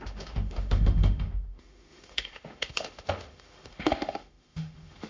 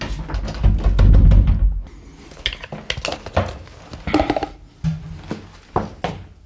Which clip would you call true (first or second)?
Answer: second